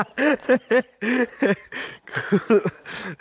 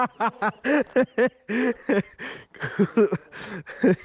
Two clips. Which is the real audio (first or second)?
second